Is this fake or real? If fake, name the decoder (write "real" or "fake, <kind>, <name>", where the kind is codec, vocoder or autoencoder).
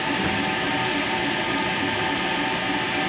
real